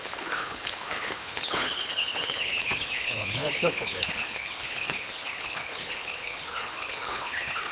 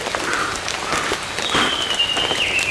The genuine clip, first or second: second